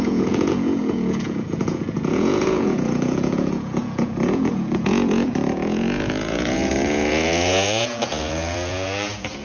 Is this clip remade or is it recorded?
remade